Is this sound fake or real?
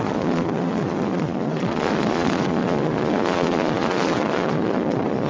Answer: fake